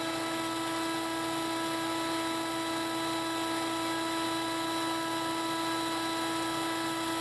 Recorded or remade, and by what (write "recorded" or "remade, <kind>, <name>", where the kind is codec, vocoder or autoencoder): recorded